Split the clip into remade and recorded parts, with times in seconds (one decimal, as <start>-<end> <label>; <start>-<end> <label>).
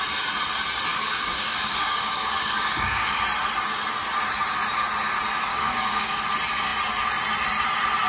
0.0-0.9 recorded; 0.9-3.2 remade; 3.2-5.5 recorded; 5.5-6.2 remade; 6.2-8.1 recorded